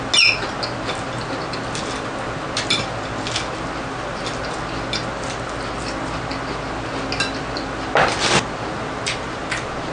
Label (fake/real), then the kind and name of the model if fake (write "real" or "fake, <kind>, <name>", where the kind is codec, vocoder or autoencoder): real